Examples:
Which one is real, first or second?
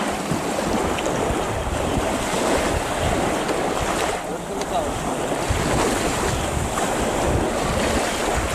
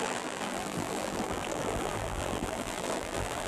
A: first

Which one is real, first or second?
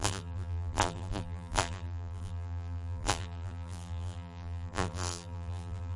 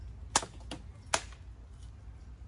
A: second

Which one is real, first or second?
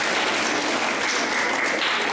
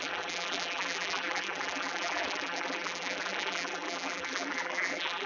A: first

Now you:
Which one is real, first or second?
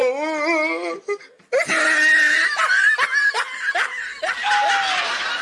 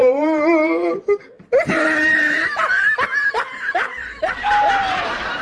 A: first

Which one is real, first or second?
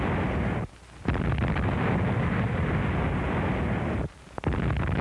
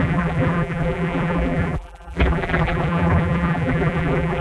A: first